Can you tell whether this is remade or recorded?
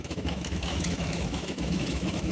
remade